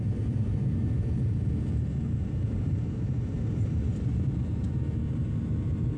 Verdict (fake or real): fake